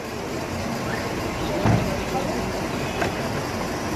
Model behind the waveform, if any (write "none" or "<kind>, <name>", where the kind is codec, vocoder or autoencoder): none